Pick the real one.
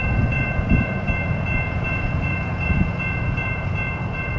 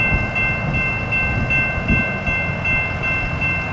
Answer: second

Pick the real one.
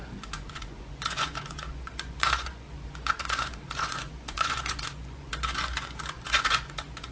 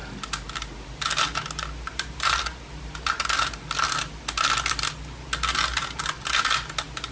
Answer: second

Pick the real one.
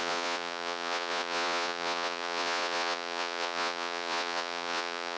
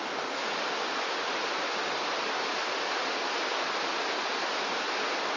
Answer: second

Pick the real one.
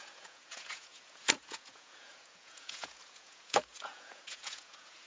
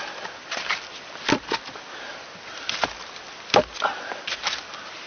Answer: second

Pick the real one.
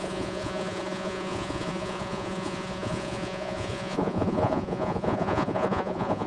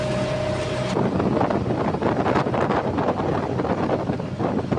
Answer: second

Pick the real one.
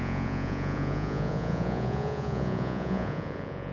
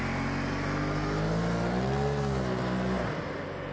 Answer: second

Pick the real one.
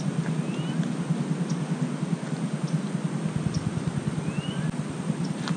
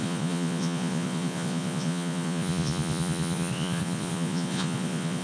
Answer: first